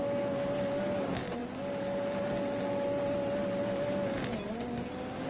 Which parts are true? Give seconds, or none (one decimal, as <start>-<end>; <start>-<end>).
0.0-5.3